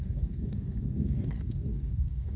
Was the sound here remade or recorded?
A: remade